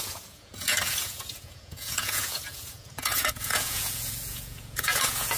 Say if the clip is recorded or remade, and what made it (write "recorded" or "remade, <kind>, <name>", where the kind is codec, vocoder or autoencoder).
remade, vocoder, Vocos